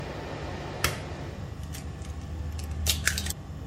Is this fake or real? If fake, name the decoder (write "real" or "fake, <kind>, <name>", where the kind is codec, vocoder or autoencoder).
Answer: real